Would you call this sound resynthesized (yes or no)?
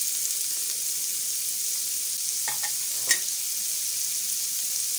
no